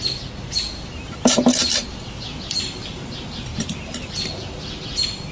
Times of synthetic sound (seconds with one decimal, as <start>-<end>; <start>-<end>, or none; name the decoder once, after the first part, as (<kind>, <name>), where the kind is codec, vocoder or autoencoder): 1.6-2.2 (vocoder, BigVGAN v2); 3.5-4.1